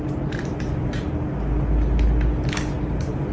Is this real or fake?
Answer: real